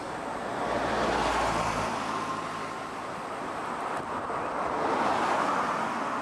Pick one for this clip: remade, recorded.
recorded